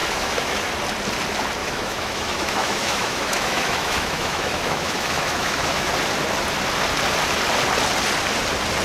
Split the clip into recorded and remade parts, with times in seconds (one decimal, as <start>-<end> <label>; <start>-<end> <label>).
0.0-0.7 remade; 0.7-1.6 recorded; 1.6-5.9 remade; 5.9-8.8 recorded